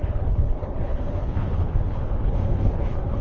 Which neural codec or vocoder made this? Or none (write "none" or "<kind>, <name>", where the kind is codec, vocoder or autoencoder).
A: codec, HILCodec